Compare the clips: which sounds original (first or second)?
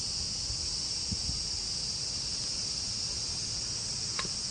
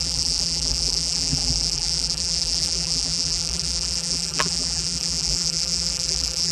first